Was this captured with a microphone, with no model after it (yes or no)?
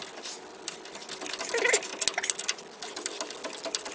yes